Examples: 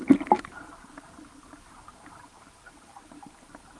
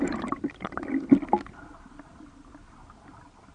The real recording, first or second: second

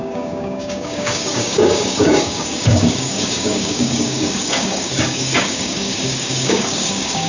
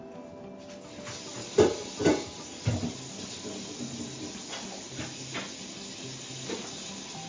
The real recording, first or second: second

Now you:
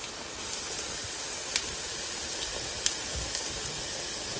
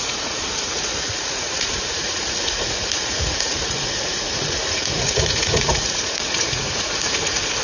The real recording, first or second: first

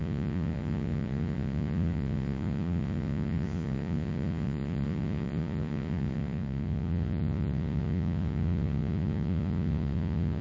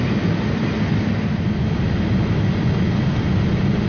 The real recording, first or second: second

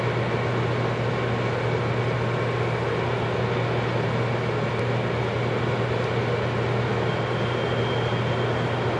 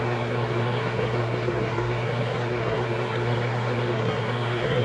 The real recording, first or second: first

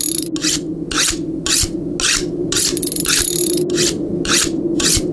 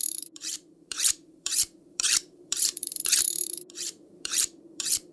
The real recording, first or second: first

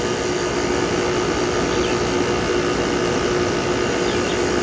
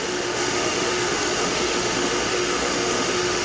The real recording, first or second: first